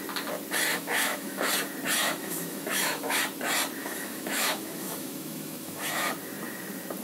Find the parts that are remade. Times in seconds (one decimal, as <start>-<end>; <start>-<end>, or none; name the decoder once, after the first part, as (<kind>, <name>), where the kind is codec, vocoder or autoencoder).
0.7-1.5 (autoencoder, DAC-VAE); 2.0-3.2; 3.8-6.1